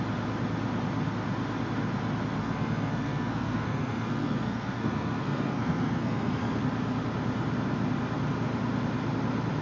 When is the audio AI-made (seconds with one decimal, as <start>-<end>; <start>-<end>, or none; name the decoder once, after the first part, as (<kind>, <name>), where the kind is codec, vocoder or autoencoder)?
2.4-6.6 (codec, SNAC)